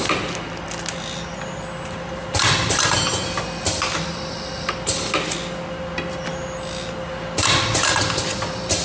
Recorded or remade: recorded